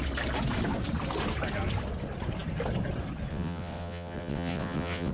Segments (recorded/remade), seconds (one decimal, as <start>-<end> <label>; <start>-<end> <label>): 0.0-3.3 recorded; 3.3-5.1 remade